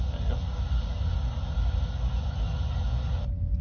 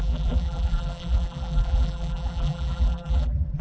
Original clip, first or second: first